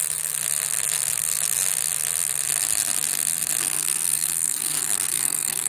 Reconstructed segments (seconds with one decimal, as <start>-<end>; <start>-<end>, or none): 3.6-5.7